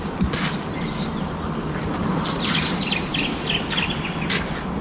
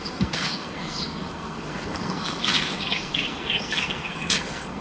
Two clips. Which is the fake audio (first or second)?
second